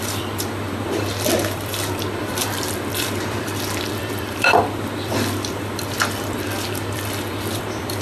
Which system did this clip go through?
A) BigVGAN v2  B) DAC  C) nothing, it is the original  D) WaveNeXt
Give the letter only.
A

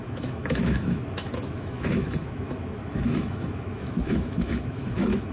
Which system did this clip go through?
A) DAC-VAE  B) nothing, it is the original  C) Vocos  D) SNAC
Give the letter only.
A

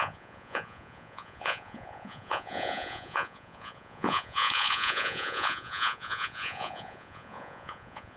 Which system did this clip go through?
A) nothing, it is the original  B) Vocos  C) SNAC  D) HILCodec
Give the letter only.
B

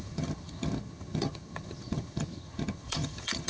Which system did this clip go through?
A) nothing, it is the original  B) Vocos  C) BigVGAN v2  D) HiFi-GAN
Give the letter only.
D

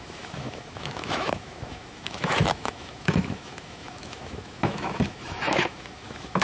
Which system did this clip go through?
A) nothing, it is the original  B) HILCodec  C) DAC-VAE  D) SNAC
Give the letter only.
C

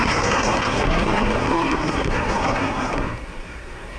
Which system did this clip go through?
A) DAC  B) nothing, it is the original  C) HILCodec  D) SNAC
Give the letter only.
D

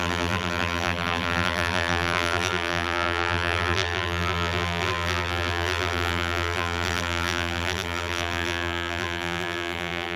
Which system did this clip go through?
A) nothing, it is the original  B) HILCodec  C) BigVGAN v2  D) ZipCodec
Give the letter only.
C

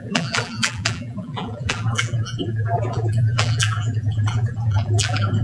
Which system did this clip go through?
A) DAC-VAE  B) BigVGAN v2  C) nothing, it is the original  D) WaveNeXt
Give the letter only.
B